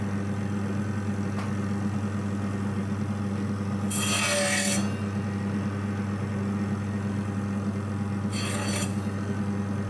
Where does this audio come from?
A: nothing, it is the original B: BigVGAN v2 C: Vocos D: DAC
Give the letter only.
A